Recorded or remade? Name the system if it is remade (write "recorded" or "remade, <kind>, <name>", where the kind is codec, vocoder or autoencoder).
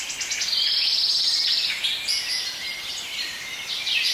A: recorded